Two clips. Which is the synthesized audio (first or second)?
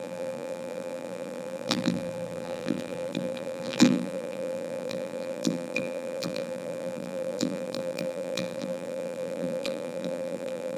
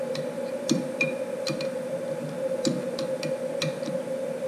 first